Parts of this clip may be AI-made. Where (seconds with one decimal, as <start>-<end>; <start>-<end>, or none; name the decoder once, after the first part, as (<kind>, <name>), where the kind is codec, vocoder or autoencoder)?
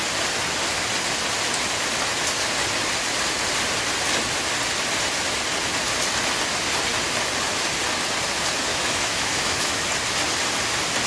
8.7-9.9 (autoencoder, DAC-VAE)